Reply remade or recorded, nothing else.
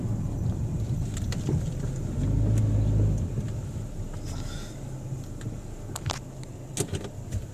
recorded